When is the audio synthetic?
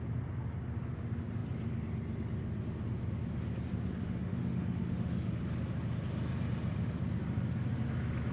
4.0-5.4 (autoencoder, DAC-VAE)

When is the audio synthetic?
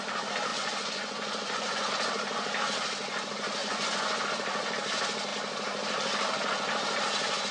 0.5-1.9 (vocoder, Vocos); 3.6-4.2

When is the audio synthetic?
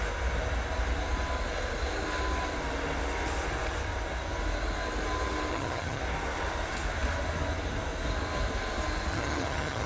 5.5-6.0 (vocoder, HiFi-GAN); 9.1-9.9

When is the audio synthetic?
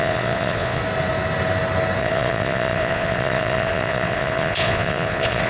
0.0-0.8 (vocoder, Vocos); 2.0-5.5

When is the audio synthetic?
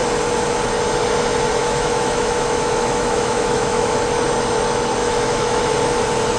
1.6-3.9 (autoencoder, DAC-VAE); 5.0-5.6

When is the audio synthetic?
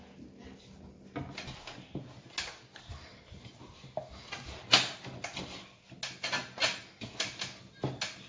none